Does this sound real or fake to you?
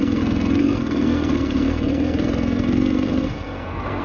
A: fake